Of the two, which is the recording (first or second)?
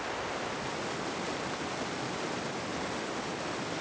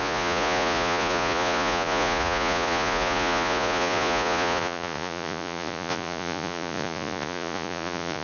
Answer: first